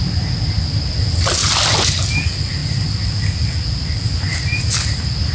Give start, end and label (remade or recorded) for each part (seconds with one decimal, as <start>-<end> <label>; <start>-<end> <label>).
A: 0.0-5.3 recorded